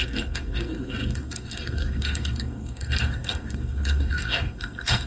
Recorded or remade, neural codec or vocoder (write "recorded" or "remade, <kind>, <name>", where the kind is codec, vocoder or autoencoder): remade, codec, SNAC